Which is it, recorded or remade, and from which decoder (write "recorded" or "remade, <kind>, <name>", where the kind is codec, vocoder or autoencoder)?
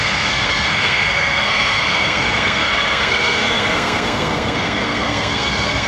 remade, codec, SNAC